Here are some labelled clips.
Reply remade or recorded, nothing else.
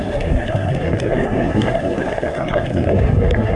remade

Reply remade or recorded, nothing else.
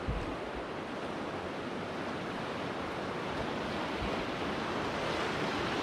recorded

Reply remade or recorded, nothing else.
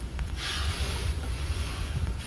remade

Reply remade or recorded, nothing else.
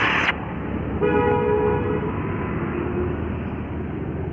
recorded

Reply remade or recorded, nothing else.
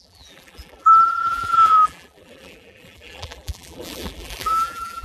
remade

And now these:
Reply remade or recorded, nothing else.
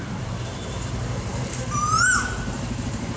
remade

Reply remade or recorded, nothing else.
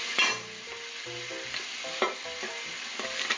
recorded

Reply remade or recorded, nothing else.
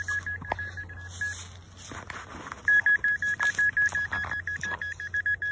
recorded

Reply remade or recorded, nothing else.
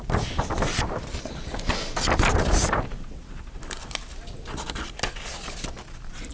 recorded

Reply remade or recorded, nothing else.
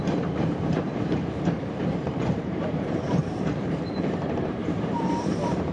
remade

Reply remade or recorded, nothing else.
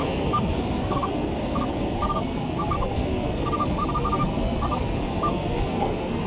remade